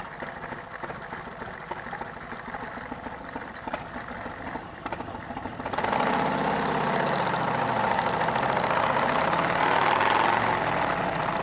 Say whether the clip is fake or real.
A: real